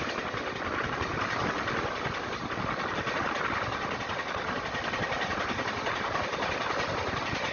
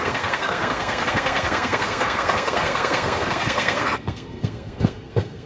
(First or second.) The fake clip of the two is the second